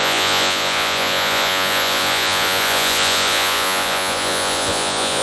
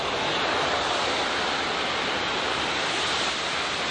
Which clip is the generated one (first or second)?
first